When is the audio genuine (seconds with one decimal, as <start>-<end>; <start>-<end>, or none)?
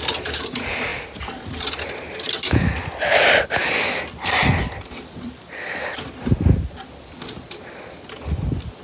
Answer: 0.0-8.8